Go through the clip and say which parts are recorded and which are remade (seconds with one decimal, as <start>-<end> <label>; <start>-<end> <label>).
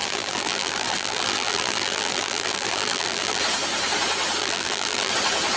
0.0-3.4 remade; 3.4-4.4 recorded; 4.4-5.1 remade; 5.1-5.6 recorded